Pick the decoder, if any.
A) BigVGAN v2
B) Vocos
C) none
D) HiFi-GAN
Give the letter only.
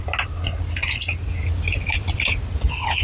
C